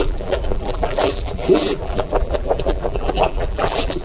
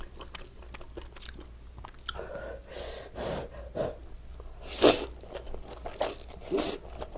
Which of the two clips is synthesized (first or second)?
first